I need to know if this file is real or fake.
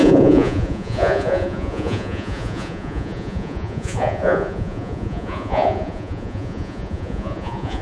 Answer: fake